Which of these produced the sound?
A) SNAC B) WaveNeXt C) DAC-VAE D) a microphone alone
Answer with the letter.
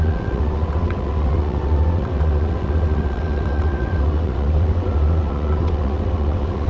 B